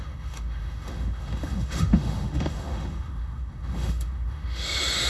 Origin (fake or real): fake